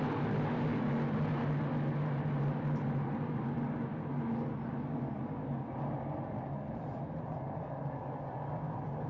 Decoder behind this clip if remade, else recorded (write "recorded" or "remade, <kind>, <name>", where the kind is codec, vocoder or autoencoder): recorded